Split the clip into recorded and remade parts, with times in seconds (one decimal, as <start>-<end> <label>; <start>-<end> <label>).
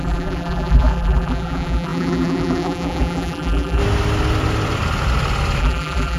0.0-3.8 remade; 3.8-5.6 recorded; 5.6-6.2 remade